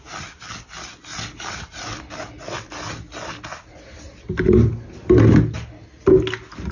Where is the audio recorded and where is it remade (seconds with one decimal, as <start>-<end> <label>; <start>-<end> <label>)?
0.0-6.7 recorded